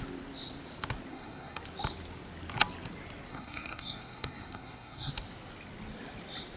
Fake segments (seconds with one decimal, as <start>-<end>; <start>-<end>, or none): 1.1-1.6; 3.3-5.1